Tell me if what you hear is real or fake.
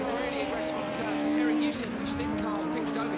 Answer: real